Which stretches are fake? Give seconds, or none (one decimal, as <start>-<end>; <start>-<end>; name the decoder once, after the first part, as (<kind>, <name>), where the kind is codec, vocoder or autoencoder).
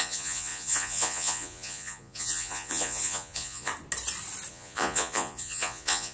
0.0-3.7 (vocoder, Vocos); 4.5-6.1